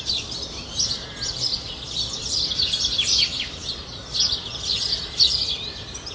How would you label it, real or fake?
real